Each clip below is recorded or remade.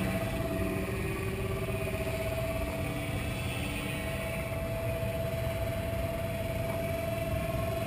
recorded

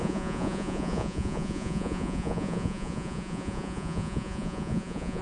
remade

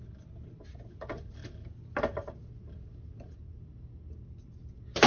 recorded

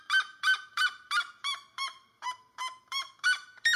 remade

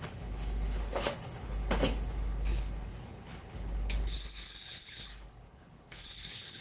remade